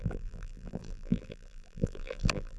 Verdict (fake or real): fake